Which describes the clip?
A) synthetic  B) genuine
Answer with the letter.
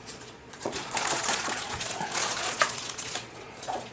A